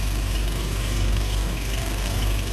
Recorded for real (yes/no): no